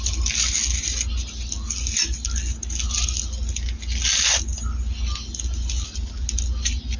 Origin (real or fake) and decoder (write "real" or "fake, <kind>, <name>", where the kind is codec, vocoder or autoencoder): real